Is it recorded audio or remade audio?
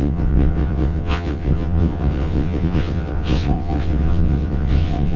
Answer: remade